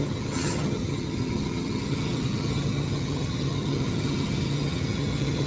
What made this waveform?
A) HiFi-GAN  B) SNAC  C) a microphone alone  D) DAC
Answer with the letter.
A